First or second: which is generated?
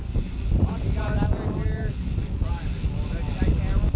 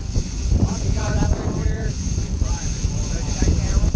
second